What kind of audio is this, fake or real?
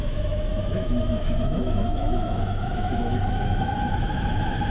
fake